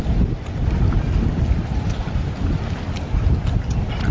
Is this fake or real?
real